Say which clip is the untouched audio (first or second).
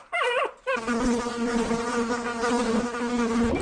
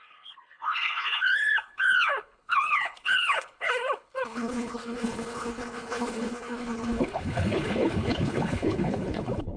first